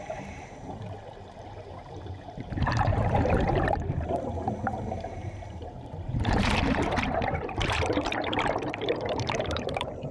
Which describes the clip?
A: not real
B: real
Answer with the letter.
A